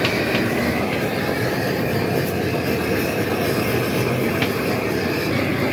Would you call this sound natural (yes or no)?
yes